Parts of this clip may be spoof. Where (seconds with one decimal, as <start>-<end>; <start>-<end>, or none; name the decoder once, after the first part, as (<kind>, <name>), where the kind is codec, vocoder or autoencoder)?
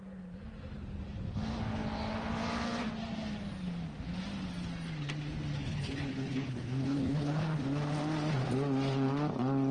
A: 5.6-7.6 (codec, HILCodec)